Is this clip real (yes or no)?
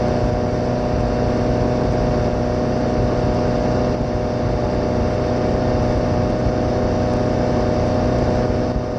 yes